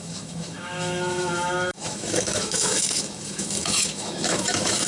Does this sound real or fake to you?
fake